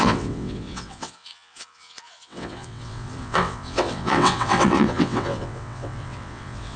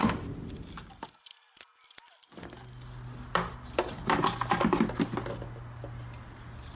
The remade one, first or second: first